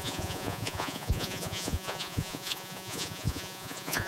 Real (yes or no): no